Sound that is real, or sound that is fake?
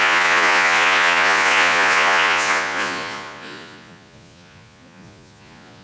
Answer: fake